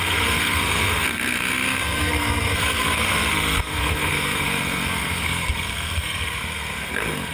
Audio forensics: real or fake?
fake